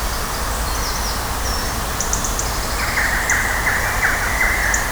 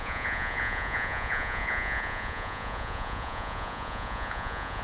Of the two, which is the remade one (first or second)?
second